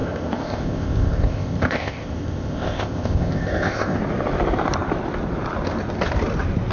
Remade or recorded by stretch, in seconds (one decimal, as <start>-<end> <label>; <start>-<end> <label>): 0.0-4.0 remade; 4.0-6.7 recorded